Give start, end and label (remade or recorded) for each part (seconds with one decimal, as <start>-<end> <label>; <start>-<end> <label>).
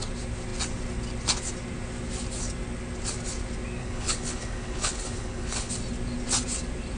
0.0-3.8 recorded; 3.8-5.7 remade; 5.7-7.0 recorded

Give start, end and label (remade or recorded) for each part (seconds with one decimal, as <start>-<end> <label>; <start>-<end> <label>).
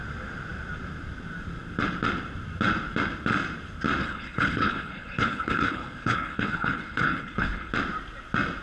0.0-4.0 recorded; 4.0-7.7 remade; 7.7-8.6 recorded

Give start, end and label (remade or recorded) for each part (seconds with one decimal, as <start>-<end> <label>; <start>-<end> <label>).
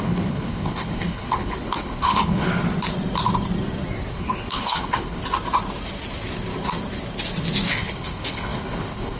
0.0-2.5 remade; 2.5-4.1 recorded; 4.1-5.2 remade; 5.2-7.7 recorded; 7.7-9.2 remade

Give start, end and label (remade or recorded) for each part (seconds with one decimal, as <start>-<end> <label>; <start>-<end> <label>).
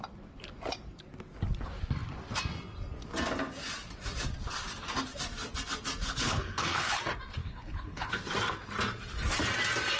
0.0-6.0 recorded; 6.0-7.0 remade; 7.0-7.4 recorded; 7.4-8.1 remade; 8.1-10.0 recorded